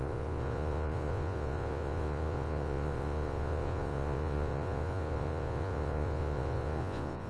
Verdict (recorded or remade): remade